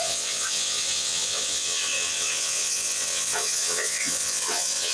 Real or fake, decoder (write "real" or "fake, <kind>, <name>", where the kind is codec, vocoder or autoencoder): fake, vocoder, WaveNeXt